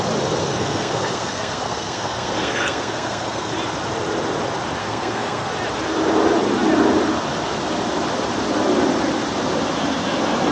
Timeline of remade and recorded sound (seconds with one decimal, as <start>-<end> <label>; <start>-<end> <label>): 0.0-0.4 recorded; 0.4-3.5 remade; 3.5-4.8 recorded; 4.8-5.5 remade; 5.5-10.5 recorded